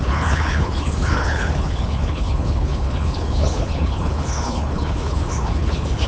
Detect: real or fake fake